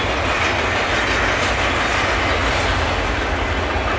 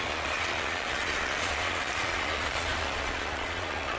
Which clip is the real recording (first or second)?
first